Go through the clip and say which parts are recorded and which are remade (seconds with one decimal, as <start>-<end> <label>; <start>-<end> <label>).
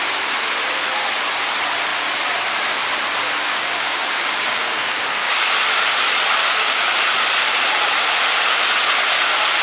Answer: 0.0-3.5 recorded; 3.5-5.5 remade; 5.5-6.4 recorded; 6.4-6.9 remade; 6.9-9.6 recorded